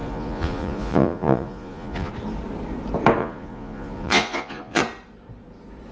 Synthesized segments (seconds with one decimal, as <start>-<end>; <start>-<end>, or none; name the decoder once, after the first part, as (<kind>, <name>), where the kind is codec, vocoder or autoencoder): 0.0-2.1 (vocoder, Vocos); 3.2-4.8